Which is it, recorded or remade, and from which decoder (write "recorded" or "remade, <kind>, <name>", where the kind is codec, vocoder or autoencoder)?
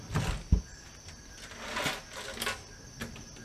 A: recorded